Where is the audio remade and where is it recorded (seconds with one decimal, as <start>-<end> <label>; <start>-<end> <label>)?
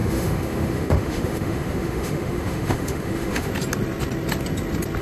0.0-3.5 remade; 3.5-5.0 recorded